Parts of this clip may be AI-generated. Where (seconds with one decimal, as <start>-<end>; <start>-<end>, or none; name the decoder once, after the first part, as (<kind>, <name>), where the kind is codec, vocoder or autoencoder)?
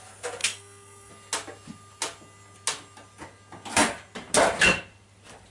0.4-1.1 (codec, SNAC)